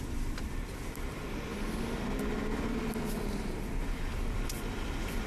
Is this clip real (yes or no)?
yes